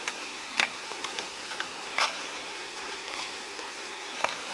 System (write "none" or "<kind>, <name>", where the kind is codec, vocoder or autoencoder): codec, SNAC